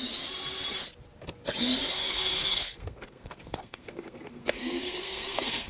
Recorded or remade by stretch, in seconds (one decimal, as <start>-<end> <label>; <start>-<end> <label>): 0.0-2.0 recorded; 2.0-5.7 remade